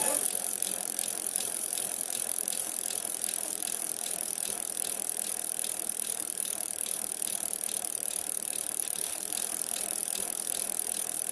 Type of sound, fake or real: fake